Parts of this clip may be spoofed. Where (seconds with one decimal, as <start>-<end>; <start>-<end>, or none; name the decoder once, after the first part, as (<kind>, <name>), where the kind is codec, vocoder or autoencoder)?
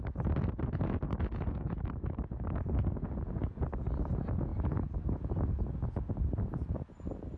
none